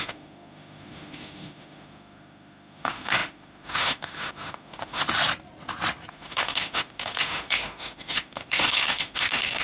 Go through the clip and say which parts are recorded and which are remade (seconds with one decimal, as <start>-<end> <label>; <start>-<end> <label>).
0.0-5.0 remade; 5.0-6.1 recorded; 6.1-9.6 remade